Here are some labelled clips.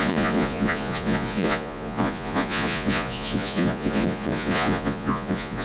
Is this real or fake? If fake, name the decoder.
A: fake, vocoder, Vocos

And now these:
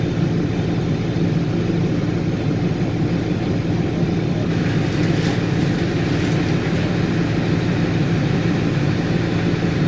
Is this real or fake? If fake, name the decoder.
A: real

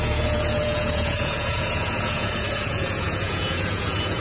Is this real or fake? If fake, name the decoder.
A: fake, vocoder, Vocos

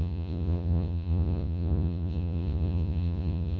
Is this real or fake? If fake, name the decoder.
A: fake, vocoder, Vocos